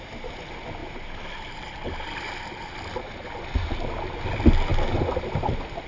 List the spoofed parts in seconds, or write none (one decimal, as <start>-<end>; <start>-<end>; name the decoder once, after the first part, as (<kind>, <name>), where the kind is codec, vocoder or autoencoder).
none